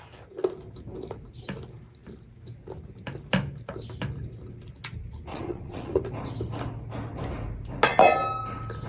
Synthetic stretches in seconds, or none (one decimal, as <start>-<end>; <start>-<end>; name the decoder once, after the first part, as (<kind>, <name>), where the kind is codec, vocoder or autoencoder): 5.3-6.0 (vocoder, Vocos)